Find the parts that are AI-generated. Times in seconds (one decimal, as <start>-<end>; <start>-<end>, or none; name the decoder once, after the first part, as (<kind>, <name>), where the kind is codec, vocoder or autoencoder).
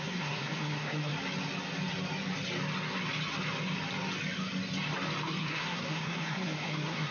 0.0-1.1 (codec, SNAC); 5.4-7.1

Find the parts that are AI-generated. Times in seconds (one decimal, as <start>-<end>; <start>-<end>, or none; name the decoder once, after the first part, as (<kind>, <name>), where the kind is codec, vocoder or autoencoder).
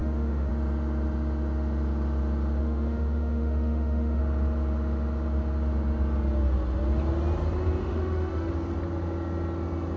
0.0-0.5 (autoencoder, DAC-VAE); 2.6-4.2; 7.8-8.5